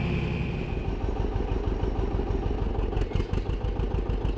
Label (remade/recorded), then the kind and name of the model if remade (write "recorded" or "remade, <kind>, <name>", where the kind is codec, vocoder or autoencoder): recorded